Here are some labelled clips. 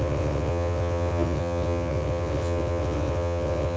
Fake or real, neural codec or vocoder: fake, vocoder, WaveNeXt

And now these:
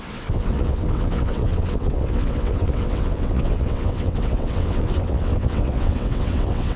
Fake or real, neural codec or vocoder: fake, vocoder, WaveNeXt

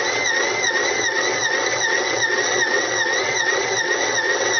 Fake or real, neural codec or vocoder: fake, vocoder, WaveNeXt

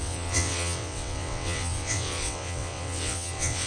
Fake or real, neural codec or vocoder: fake, vocoder, WaveNeXt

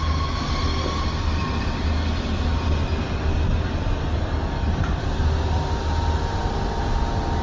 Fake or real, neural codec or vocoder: real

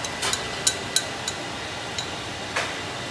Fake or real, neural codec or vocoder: real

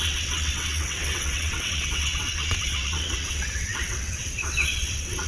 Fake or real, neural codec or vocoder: fake, vocoder, WaveNeXt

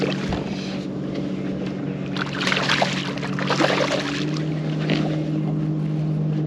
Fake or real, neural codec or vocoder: real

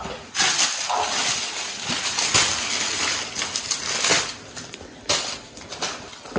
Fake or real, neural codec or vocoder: real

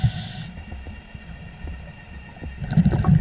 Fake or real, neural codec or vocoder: real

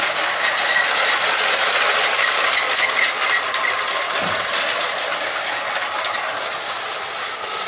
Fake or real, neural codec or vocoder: real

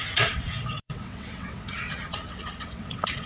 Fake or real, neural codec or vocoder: fake, vocoder, WaveNeXt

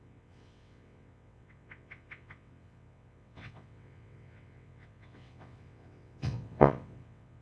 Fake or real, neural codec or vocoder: fake, vocoder, WaveNeXt